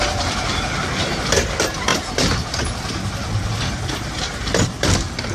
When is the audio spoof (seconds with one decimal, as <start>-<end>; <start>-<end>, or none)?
none